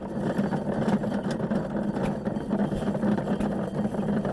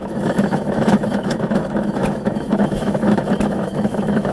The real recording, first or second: first